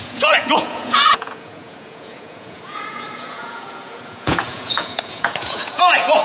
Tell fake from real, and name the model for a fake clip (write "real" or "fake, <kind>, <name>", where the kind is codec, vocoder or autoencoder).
fake, vocoder, Vocos